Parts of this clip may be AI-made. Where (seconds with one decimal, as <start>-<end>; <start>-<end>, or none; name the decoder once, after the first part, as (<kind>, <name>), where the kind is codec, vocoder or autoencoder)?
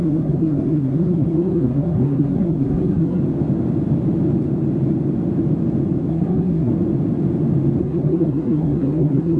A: 0.0-3.2 (codec, SNAC); 6.1-6.7; 7.8-9.4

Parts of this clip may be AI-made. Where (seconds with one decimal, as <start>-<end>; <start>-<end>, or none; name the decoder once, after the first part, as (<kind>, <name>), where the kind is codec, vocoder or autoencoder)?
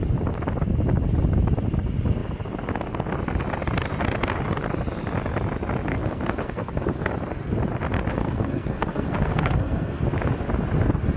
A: 5.9-7.1 (codec, SNAC); 8.1-10.0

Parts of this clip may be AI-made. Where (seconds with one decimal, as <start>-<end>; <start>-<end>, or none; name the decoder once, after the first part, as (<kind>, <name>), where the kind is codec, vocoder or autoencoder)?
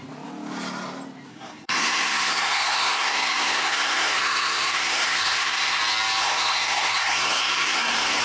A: 1.3-5.8 (codec, SNAC); 6.2-8.2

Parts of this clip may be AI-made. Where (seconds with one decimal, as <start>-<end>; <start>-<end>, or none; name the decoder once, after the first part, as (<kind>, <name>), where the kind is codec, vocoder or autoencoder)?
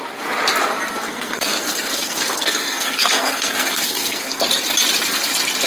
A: 1.0-4.4 (codec, SNAC)